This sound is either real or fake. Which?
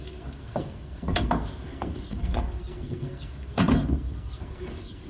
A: fake